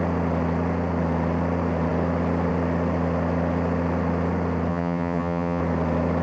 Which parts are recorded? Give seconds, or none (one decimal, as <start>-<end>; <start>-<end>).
0.0-4.7; 5.6-6.2